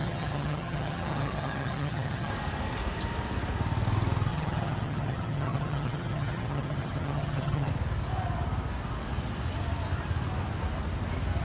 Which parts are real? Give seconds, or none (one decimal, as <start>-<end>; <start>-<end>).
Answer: 2.3-4.3; 7.7-11.4